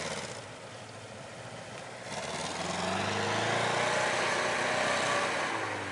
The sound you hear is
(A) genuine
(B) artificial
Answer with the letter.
A